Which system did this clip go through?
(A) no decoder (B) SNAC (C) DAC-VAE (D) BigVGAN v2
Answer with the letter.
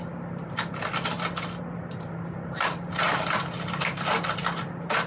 A